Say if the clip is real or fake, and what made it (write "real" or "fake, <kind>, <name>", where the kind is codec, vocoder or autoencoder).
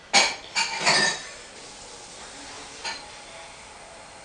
real